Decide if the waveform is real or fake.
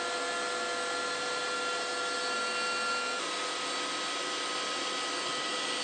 real